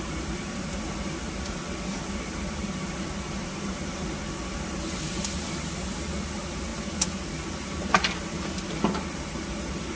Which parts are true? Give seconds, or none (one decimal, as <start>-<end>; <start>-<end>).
0.0-10.0